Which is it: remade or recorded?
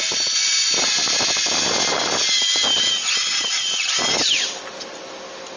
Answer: recorded